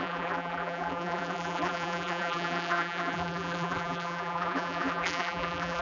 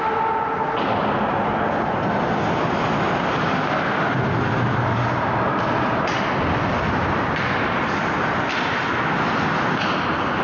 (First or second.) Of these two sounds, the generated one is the first